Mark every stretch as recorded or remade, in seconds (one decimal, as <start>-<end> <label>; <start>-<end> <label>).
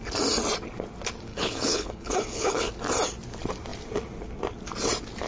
0.0-1.3 recorded; 1.3-2.7 remade; 2.7-5.3 recorded